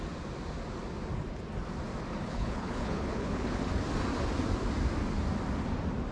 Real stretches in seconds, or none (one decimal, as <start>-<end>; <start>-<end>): 0.0-2.2; 3.6-6.1